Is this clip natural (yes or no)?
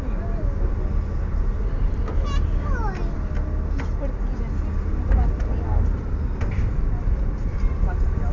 yes